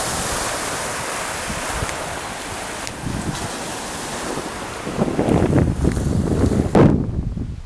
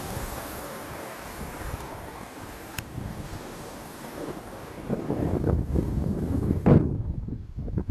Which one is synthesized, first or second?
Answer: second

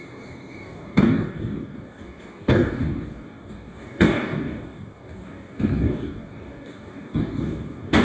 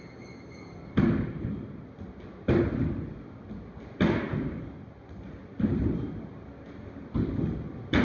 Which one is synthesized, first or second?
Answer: first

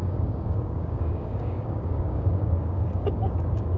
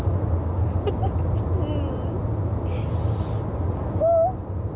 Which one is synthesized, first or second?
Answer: first